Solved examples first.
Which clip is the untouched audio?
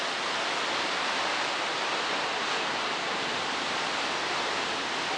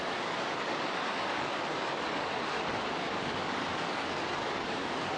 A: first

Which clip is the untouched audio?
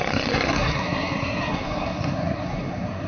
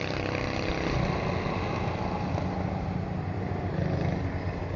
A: second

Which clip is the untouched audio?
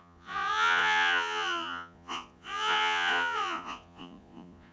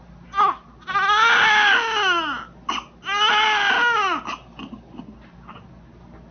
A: second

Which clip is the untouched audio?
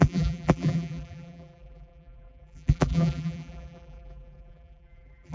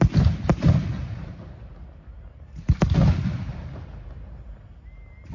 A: second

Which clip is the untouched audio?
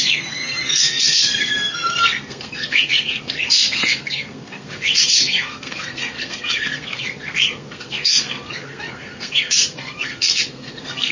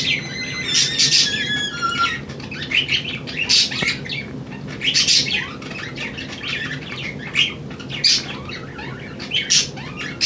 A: second